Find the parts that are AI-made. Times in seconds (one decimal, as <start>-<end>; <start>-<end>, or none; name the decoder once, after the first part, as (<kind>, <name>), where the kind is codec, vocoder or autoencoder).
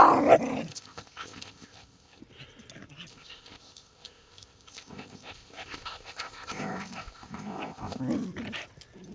0.7-2.2 (codec, ZipCodec); 3.1-8.0